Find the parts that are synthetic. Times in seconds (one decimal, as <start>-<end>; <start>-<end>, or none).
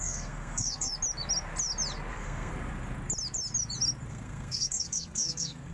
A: 0.0-0.9; 2.1-2.5; 4.1-5.7